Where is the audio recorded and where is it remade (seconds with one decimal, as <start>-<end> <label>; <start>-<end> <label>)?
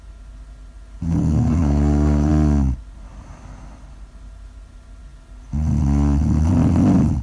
0.0-1.2 recorded; 1.2-2.3 remade; 2.3-7.2 recorded